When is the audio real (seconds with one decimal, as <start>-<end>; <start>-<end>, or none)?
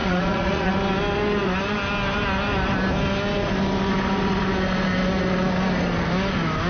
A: 0.7-6.7